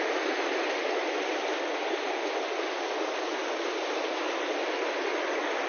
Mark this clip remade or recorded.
recorded